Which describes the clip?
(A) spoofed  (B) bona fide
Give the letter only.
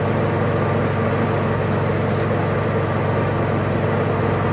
B